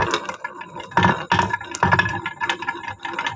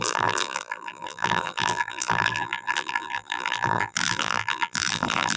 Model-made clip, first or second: second